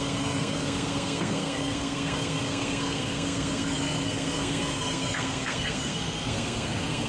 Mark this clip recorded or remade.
remade